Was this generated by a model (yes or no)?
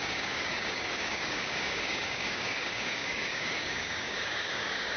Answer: yes